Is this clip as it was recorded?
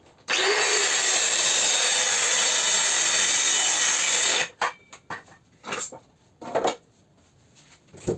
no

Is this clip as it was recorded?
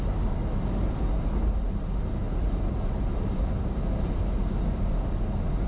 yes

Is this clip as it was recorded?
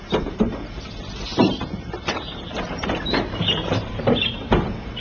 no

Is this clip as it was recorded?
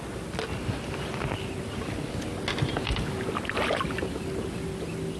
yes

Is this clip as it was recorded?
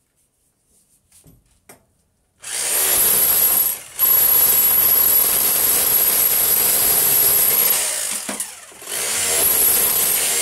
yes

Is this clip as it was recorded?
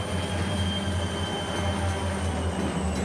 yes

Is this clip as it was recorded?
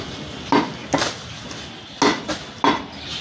yes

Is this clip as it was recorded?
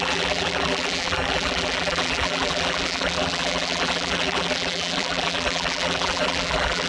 no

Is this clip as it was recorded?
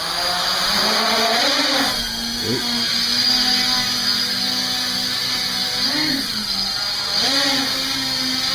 yes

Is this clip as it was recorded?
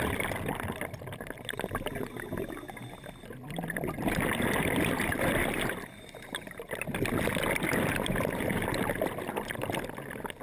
yes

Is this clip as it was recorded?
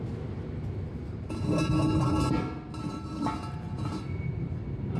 yes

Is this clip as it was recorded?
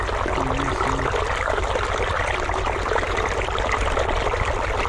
yes